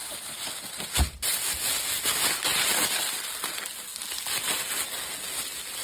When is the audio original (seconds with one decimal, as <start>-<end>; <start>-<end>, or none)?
0.5-2.5; 3.0-5.8